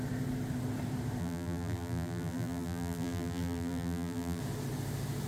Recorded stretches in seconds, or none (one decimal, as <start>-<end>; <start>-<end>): 0.0-1.2; 4.4-5.3